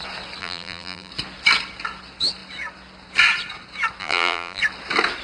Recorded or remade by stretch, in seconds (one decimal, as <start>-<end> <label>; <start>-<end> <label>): 0.0-0.4 recorded; 0.4-1.1 remade; 1.1-4.0 recorded; 4.0-4.6 remade; 4.6-5.2 recorded